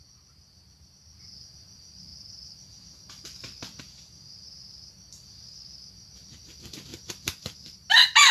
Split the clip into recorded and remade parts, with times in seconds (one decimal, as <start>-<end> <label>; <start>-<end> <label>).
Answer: 0.0-8.3 recorded